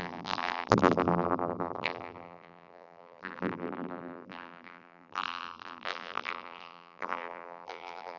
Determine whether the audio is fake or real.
fake